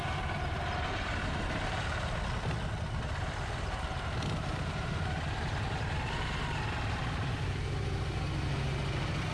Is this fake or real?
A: real